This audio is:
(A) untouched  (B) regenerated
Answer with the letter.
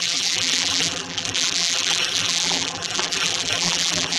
B